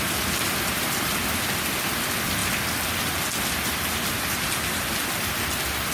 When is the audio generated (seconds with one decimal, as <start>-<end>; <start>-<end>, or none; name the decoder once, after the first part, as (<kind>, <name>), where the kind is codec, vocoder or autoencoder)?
none